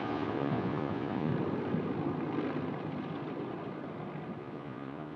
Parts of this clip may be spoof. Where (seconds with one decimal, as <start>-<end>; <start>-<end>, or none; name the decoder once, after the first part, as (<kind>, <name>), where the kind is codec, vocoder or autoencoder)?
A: 0.0-1.3 (vocoder, Vocos); 4.4-5.2